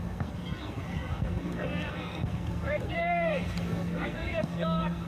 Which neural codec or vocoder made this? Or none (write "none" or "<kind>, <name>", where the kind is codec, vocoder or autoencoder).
codec, SNAC